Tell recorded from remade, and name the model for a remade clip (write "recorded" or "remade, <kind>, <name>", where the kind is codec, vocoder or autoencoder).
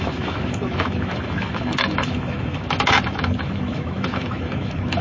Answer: remade, autoencoder, DAC-VAE